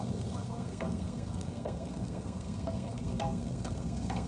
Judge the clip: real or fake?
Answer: fake